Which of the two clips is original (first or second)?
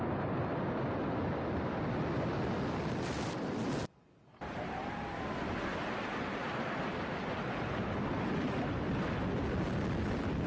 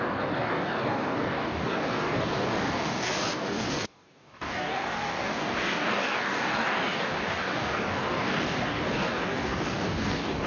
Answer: first